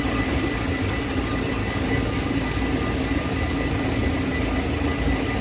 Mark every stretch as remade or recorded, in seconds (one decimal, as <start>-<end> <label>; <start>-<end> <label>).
0.0-1.6 recorded; 1.6-2.6 remade; 2.6-5.4 recorded